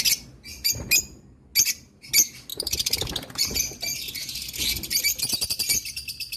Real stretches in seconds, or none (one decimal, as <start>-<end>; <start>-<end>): 0.0-2.5; 3.1-6.4